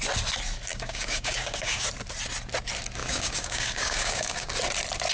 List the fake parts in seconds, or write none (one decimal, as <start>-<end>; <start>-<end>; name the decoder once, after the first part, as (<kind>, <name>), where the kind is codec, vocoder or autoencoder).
0.7-1.9 (codec, DAC); 3.0-4.5

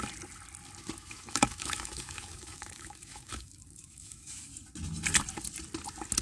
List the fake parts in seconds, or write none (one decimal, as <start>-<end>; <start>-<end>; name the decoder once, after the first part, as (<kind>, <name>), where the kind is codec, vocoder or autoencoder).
0.8-4.5 (autoencoder, DAC-VAE)

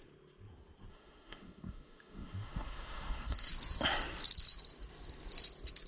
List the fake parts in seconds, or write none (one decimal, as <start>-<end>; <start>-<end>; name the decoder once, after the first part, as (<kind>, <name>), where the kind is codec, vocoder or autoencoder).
0.9-3.5 (autoencoder, DAC-VAE)

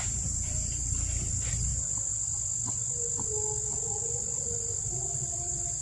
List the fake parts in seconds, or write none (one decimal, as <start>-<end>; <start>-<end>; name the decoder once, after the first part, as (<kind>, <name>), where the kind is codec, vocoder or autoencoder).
0.0-1.7 (vocoder, BigVGAN v2); 5.2-5.8

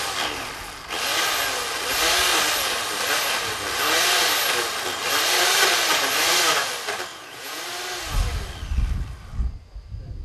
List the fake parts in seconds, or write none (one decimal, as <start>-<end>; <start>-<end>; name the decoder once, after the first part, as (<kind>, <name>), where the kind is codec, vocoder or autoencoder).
7.1-7.6 (vocoder, Vocos)